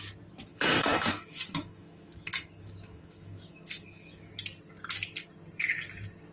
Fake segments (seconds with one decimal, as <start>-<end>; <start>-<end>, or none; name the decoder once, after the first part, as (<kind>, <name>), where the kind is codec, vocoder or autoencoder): 0.5-4.3 (autoencoder, DAC-VAE)